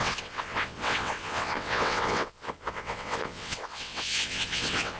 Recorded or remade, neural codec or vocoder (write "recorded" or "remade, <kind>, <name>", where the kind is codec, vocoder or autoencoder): remade, vocoder, WaveNeXt